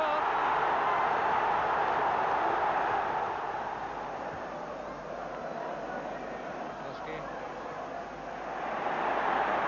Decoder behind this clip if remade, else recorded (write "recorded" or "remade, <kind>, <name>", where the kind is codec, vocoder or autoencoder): recorded